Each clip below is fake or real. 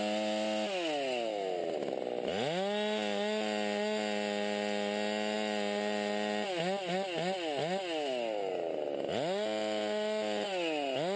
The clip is real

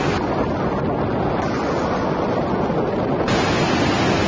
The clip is real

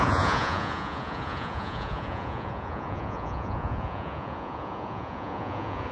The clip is fake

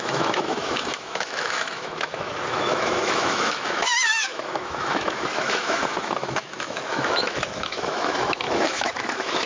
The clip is fake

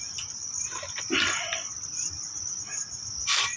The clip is real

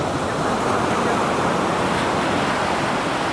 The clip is real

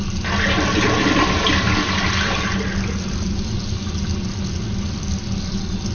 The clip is real